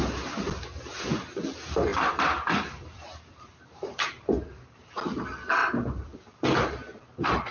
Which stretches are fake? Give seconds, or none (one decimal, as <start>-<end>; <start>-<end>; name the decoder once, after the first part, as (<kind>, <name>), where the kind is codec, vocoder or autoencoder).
1.9-4.9 (vocoder, BigVGAN v2); 5.6-6.3